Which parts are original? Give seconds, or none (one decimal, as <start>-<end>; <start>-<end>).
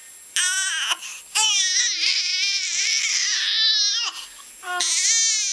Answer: 0.0-5.5